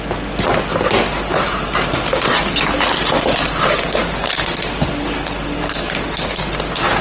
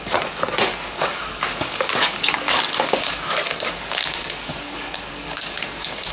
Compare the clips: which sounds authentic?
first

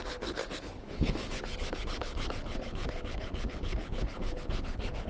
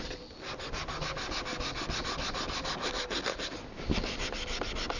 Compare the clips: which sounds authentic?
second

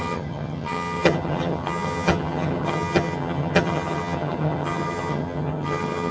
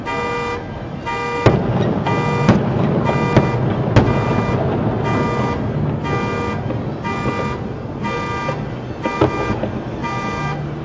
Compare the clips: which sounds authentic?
second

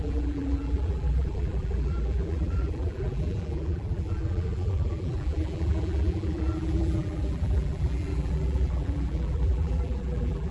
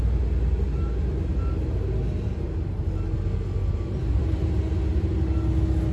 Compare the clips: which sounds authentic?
second